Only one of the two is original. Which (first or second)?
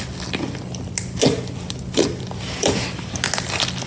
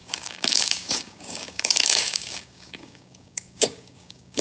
first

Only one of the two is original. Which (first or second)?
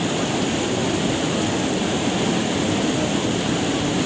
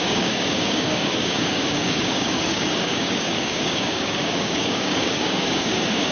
first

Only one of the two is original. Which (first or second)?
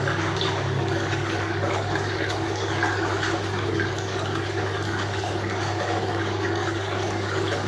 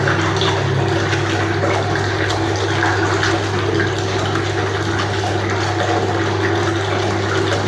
second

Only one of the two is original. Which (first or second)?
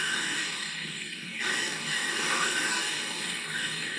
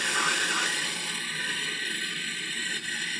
second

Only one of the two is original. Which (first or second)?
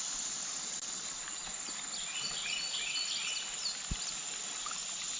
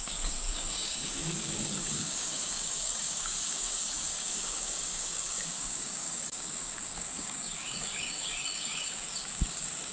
first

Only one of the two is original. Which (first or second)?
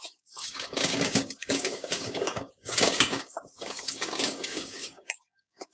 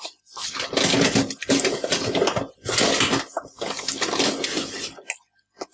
second